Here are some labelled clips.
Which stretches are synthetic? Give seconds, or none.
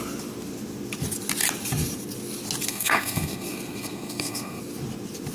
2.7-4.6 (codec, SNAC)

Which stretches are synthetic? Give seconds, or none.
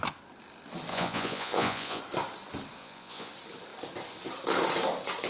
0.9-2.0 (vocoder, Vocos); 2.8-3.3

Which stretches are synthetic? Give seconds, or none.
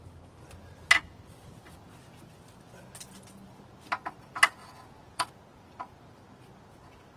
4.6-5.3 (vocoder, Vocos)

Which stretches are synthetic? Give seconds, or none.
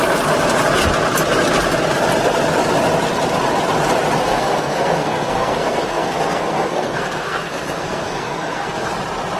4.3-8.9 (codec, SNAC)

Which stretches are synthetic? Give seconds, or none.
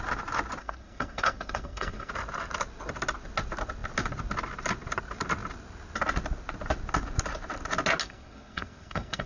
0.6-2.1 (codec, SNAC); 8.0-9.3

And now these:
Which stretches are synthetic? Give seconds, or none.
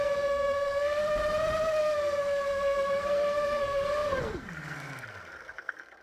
0.0-1.0 (codec, SNAC); 1.8-6.0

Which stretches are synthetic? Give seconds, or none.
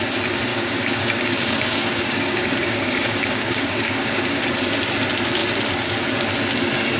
0.5-4.4 (codec, DAC)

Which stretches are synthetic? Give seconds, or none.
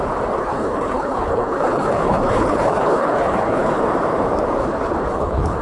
0.4-3.8 (codec, HILCodec); 4.6-5.6